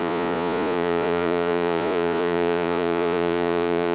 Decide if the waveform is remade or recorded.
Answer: remade